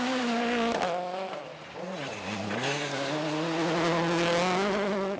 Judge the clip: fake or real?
real